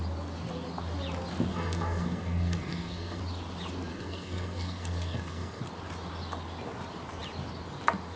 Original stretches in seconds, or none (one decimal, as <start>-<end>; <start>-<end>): 0.0-1.5; 3.2-3.9; 5.6-8.2